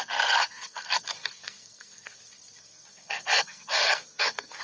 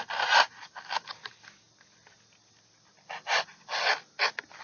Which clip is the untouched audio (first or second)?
second